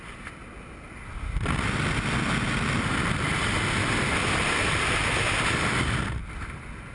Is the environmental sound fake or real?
real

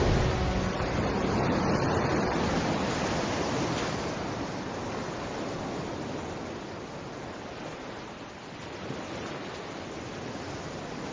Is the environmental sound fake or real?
real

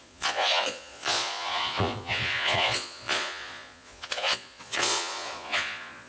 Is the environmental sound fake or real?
fake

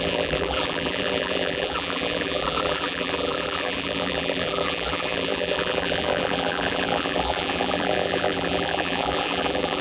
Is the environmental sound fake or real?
fake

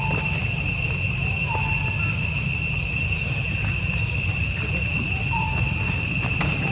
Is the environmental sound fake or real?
real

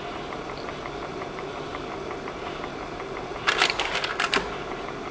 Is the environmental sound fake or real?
fake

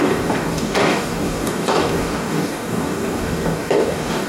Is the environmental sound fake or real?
fake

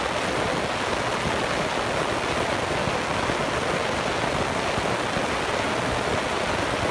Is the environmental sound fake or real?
real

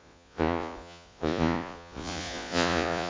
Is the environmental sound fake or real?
fake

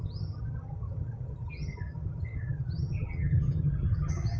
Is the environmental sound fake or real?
fake